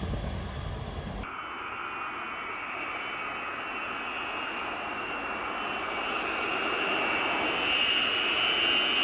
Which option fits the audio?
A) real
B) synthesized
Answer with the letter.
A